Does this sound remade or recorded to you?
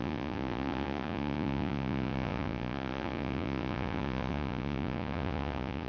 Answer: remade